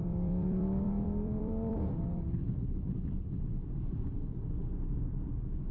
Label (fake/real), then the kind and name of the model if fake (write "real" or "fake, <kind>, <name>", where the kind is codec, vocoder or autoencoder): fake, vocoder, BigVGAN v2